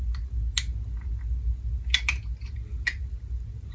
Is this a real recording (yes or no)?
yes